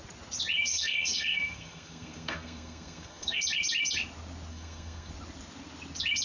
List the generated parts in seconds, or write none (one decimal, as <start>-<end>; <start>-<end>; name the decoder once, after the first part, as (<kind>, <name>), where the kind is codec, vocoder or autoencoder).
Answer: 0.7-3.4 (codec, SNAC); 4.5-5.1